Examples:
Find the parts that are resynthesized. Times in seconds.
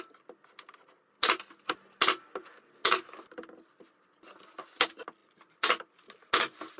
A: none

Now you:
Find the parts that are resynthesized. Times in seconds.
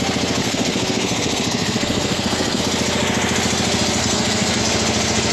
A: 0.4-2.6 (codec, SNAC); 4.0-4.6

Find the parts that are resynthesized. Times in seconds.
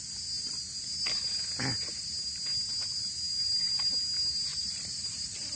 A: 3.3-3.9 (vocoder, BigVGAN v2); 4.5-5.6